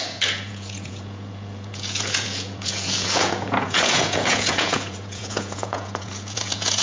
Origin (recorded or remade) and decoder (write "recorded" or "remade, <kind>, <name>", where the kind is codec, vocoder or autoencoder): remade, vocoder, Vocos